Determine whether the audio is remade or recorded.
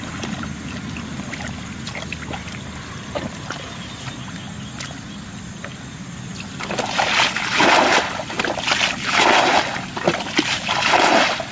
recorded